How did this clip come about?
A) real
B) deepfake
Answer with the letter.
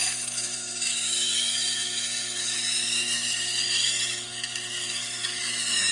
B